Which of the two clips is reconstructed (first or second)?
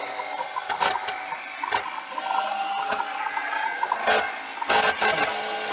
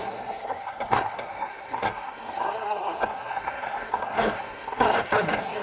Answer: second